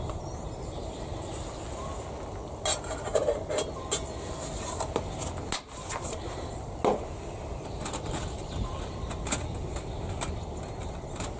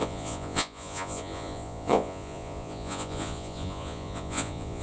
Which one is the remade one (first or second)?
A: second